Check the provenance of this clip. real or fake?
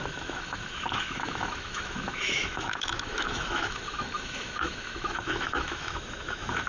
fake